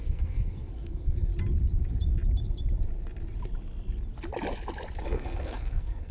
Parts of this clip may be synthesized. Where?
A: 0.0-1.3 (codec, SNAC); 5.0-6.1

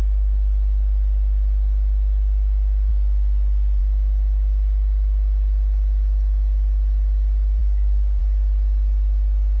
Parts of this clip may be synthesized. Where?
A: 7.6-8.2 (codec, DAC)

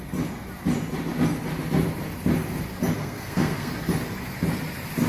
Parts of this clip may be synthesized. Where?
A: 3.0-3.7 (codec, SNAC)